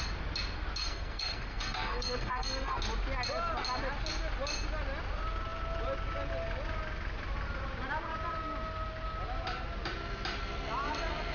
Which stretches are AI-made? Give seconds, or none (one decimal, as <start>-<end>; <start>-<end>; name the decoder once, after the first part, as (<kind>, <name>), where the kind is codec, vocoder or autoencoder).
0.8-2.8 (codec, SNAC)